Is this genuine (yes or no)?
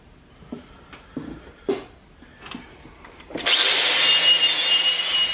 yes